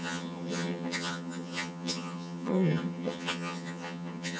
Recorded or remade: remade